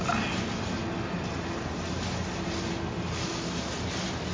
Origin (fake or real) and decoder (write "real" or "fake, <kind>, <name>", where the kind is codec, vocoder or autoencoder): real